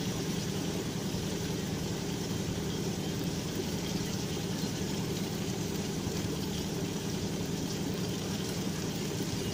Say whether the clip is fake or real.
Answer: fake